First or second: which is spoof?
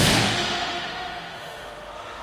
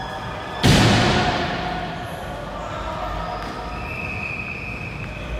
first